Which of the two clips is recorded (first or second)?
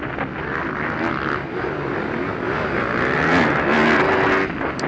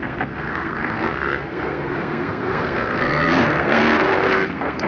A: first